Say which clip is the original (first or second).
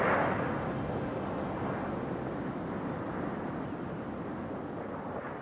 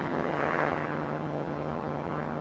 first